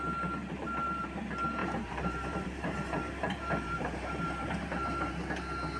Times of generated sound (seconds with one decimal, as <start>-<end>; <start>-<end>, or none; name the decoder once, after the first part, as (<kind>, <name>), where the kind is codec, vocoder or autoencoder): 0.4-1.2 (vocoder, BigVGAN v2); 1.6-5.1